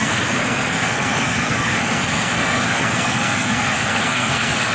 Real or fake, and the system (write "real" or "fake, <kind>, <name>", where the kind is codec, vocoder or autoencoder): fake, codec, SNAC